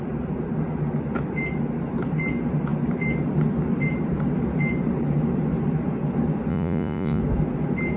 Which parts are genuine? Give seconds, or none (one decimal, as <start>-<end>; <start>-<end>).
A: 0.0-6.5; 7.2-8.0